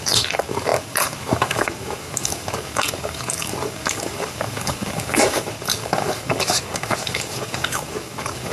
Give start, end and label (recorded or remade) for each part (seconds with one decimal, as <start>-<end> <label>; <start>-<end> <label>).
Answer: 0.0-8.5 remade